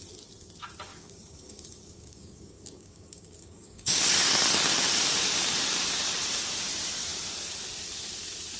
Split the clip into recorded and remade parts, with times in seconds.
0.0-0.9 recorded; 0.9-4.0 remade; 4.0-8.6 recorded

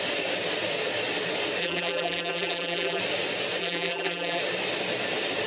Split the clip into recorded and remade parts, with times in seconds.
0.0-1.6 recorded; 1.6-3.0 remade; 3.0-3.6 recorded; 3.6-4.4 remade; 4.4-5.5 recorded

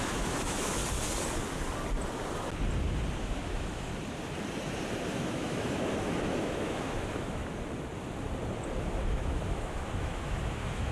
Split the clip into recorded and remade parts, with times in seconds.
0.0-0.8 remade; 0.8-3.2 recorded; 3.2-3.9 remade; 3.9-5.1 recorded; 5.1-7.4 remade; 7.4-8.8 recorded; 8.8-10.9 remade

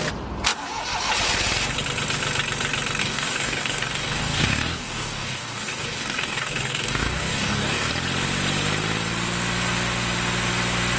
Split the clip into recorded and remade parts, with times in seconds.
0.0-3.0 recorded; 3.0-7.9 remade; 7.9-11.0 recorded